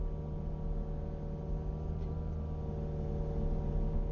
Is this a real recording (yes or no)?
yes